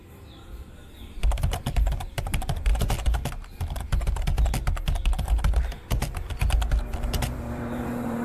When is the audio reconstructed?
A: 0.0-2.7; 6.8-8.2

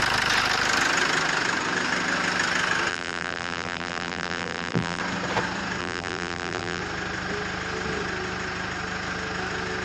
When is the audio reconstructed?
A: 2.9-5.0; 5.8-6.8